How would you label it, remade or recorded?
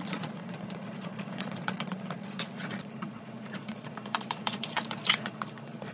remade